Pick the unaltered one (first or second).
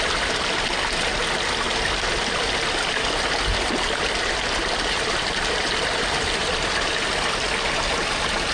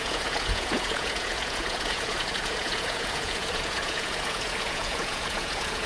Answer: first